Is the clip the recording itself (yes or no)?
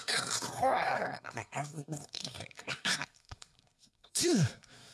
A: no